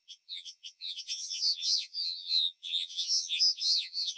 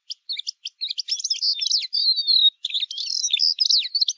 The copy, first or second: first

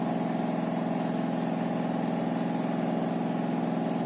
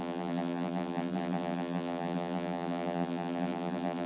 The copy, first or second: second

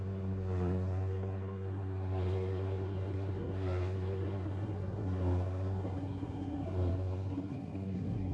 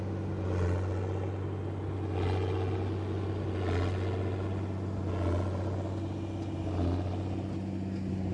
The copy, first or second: first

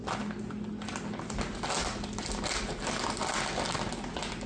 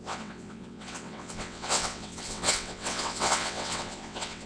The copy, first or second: second